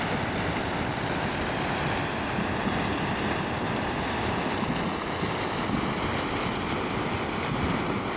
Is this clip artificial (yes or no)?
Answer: no